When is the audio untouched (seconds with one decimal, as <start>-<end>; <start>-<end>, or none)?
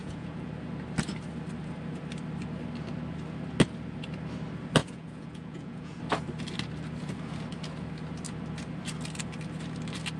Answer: 0.5-4.8; 6.0-10.2